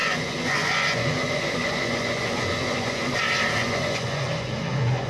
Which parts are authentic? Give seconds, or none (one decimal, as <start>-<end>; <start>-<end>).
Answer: 3.1-3.6